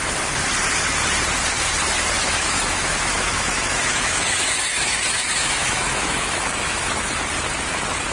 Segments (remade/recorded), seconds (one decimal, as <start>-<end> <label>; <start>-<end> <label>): 0.0-2.2 recorded; 2.2-7.1 remade; 7.1-8.1 recorded